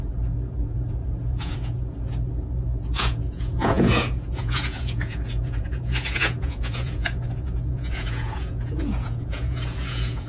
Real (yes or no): no